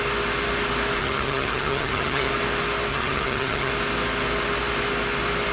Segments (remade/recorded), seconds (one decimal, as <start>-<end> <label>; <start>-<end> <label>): 0.0-1.0 recorded; 1.0-2.3 remade; 2.3-2.9 recorded; 2.9-3.7 remade; 3.7-5.5 recorded